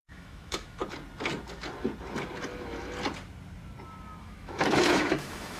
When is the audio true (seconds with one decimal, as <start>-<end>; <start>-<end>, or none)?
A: 0.8-4.2